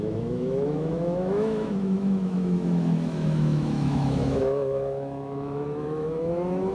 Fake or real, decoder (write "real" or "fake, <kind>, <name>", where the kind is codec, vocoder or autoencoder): fake, autoencoder, DAC-VAE